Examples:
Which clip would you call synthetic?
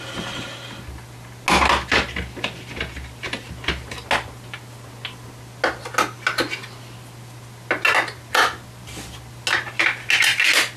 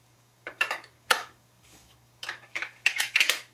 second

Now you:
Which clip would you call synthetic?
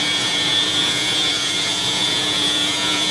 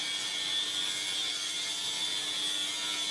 first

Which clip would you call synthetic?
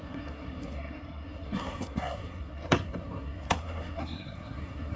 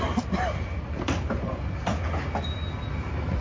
first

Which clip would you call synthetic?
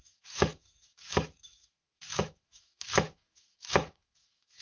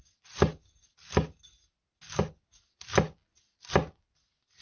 first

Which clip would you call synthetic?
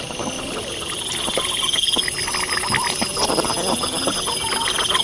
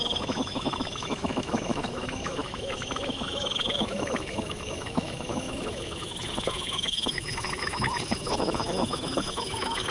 second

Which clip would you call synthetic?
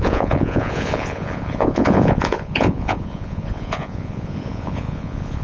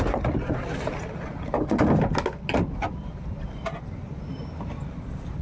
first